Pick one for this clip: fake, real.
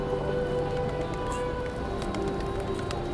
real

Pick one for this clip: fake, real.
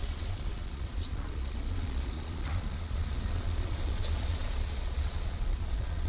fake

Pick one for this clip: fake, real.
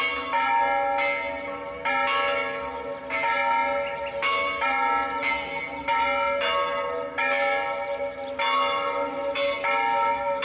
real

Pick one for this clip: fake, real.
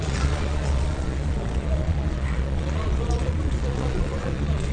fake